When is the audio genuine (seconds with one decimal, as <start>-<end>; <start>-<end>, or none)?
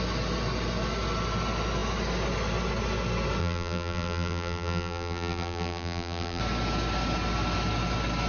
0.0-3.4; 6.4-8.3